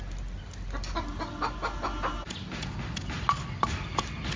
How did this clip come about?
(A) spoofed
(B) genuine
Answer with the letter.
B